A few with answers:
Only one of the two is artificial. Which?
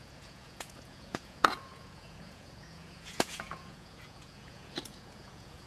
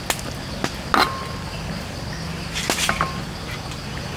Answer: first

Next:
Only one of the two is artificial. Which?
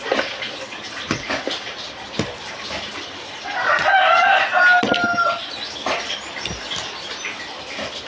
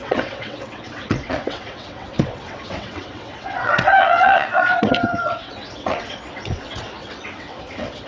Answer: second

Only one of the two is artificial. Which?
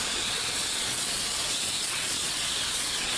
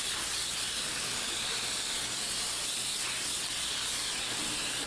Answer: first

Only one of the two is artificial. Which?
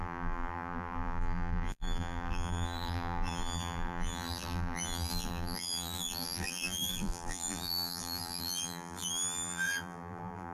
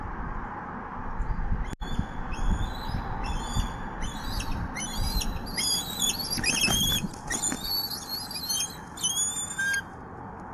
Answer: first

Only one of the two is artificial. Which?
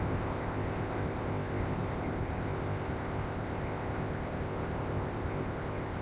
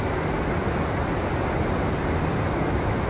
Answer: first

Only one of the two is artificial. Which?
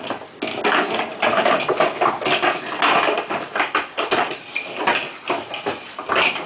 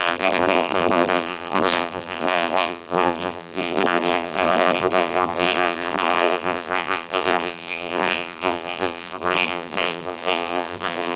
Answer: second